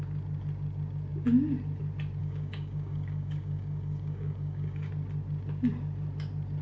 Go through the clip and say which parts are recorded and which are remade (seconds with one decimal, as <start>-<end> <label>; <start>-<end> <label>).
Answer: 0.0-2.2 recorded; 2.2-4.9 remade; 4.9-6.6 recorded